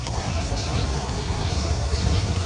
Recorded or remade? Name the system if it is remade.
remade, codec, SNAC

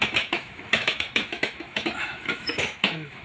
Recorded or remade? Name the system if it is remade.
remade, autoencoder, DAC-VAE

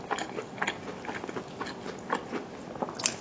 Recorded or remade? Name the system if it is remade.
recorded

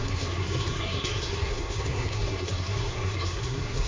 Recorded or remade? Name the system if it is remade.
remade, codec, SNAC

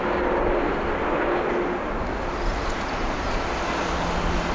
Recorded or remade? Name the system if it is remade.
recorded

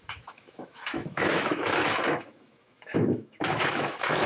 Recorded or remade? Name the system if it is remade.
remade, autoencoder, DAC-VAE